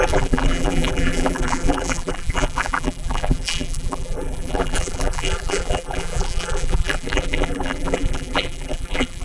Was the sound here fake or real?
fake